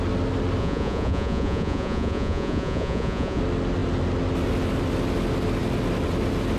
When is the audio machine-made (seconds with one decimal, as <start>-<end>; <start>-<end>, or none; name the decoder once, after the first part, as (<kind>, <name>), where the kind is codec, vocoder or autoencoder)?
0.6-3.4 (vocoder, Vocos)